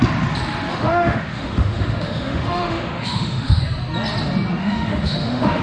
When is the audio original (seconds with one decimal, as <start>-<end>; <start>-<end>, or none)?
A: 0.0-0.7; 3.6-4.6